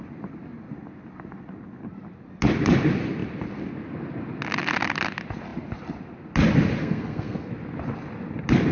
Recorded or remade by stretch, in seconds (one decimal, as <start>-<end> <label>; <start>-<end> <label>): 0.0-6.8 recorded; 6.8-7.5 remade; 7.5-8.7 recorded